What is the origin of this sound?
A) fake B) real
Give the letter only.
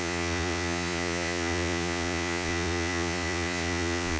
A